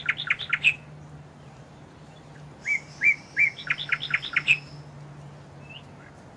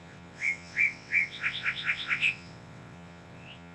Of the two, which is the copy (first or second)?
second